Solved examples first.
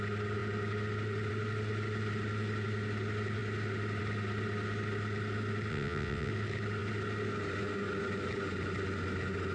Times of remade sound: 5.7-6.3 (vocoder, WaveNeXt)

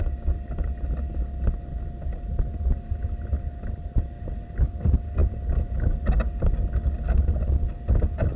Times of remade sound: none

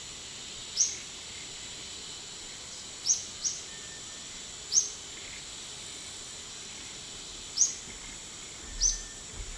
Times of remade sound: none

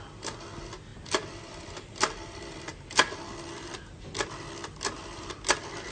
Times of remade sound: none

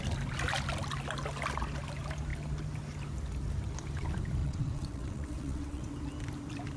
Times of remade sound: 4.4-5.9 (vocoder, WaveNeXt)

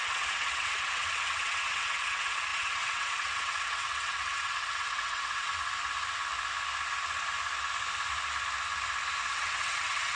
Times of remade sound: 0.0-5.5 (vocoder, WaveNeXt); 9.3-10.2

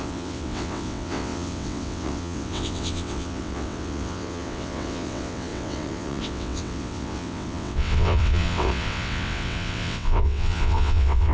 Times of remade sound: 0.0-11.3 (vocoder, WaveNeXt)

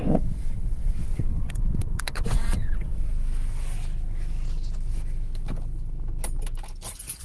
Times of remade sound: 0.0-3.1 (vocoder, WaveNeXt)